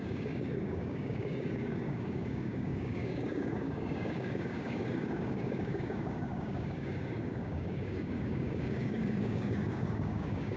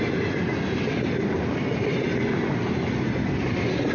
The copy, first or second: first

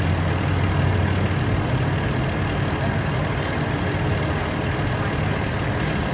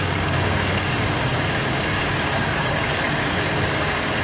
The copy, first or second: second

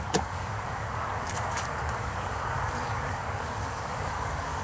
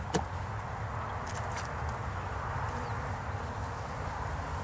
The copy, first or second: first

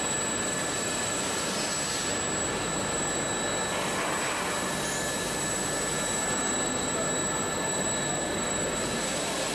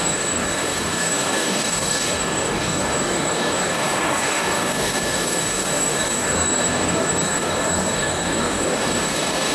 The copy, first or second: second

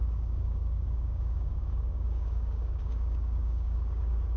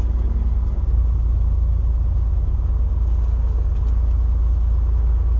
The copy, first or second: first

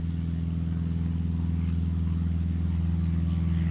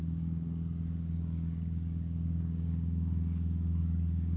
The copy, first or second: second